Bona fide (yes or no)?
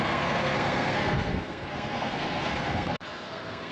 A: no